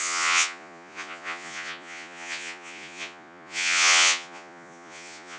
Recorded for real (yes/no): no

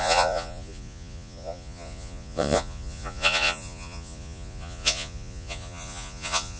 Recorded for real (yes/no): no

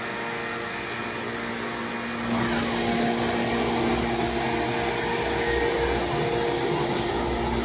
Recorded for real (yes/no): yes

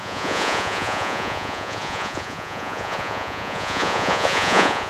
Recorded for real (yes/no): no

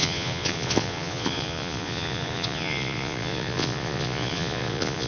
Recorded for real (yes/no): no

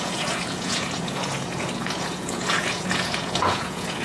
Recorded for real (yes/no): no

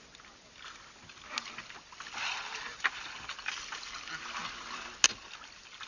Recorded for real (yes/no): yes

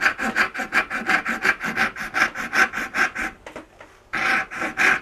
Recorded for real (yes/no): yes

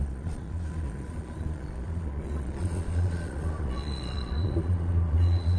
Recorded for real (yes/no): no